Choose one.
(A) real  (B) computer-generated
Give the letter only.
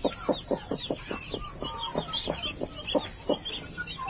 A